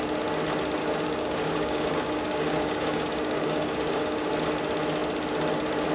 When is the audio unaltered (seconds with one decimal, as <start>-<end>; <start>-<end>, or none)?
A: 0.0-0.8; 4.3-5.9